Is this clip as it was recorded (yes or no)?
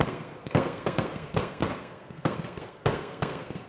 no